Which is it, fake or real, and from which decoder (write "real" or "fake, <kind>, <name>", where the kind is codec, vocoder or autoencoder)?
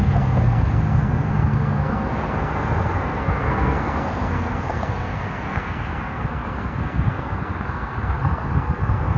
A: fake, codec, SNAC